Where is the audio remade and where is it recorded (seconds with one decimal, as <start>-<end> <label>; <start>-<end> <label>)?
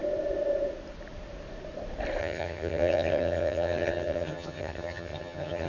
0.0-2.2 recorded; 2.2-5.7 remade